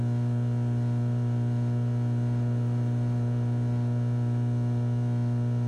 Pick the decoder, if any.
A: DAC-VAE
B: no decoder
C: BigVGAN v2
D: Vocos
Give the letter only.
C